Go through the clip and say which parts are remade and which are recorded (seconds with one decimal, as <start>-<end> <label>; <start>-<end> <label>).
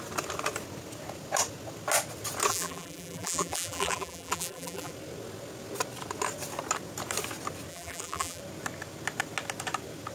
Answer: 0.0-2.5 recorded; 2.5-4.9 remade; 4.9-7.7 recorded; 7.7-8.4 remade; 8.4-10.1 recorded